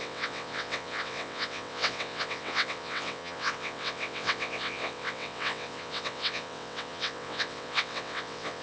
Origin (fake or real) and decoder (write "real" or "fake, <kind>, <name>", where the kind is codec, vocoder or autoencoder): fake, vocoder, WaveNeXt